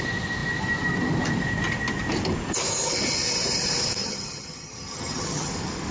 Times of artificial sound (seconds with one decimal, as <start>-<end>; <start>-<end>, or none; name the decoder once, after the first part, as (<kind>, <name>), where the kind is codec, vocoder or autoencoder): 4.0-5.5 (vocoder, HiFi-GAN)